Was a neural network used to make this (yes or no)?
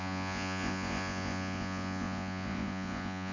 yes